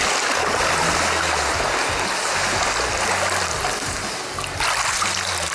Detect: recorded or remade recorded